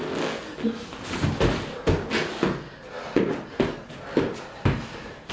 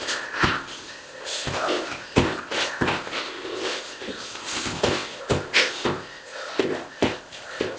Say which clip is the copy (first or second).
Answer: second